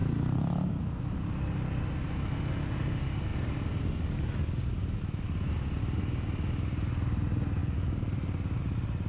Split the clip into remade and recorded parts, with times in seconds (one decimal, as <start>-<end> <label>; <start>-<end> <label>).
0.0-0.8 remade; 0.8-3.3 recorded; 3.3-5.8 remade; 5.8-7.6 recorded; 7.6-8.6 remade; 8.6-9.1 recorded